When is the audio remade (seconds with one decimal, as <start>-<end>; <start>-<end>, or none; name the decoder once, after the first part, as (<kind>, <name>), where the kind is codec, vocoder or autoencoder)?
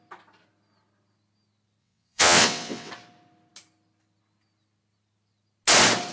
1.8-2.9 (vocoder, WaveNeXt)